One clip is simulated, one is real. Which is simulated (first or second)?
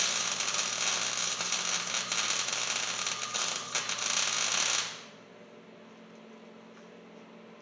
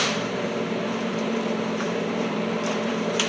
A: second